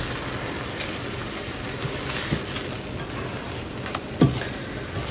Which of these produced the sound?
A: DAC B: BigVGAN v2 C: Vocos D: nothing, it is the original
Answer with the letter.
D